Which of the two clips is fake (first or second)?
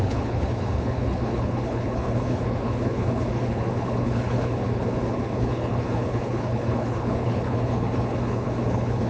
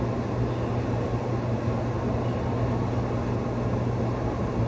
first